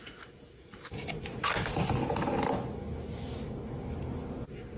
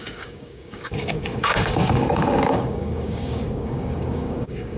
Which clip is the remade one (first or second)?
second